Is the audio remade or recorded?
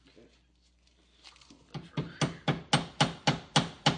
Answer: recorded